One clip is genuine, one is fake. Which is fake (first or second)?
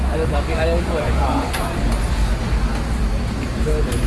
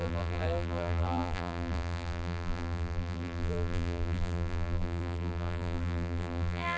second